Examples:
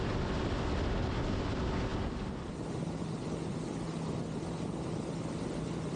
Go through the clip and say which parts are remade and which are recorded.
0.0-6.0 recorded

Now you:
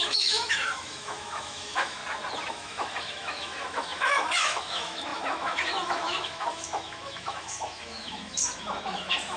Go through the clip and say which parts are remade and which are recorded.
0.0-2.0 remade; 2.0-2.5 recorded; 2.5-9.4 remade

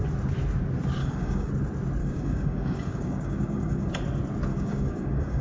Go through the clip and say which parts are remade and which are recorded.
0.0-1.0 recorded; 1.0-1.5 remade; 1.5-2.0 recorded; 2.0-3.9 remade; 3.9-4.5 recorded; 4.5-5.4 remade

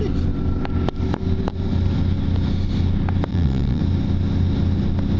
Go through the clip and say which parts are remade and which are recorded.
0.0-3.3 recorded; 3.3-3.8 remade; 3.8-5.2 recorded

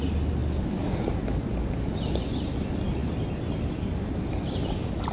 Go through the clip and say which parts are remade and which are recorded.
0.0-5.1 recorded